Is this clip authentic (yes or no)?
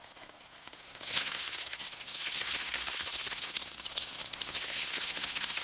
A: no